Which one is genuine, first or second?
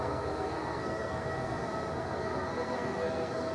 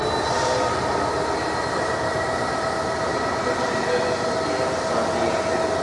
second